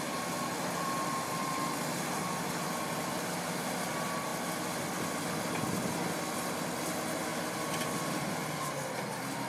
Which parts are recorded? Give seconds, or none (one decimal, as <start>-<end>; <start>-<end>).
0.0-9.5